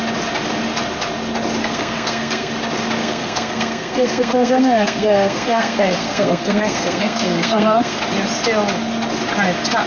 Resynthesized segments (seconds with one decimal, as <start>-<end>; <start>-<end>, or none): 1.6-2.5; 3.0-8.0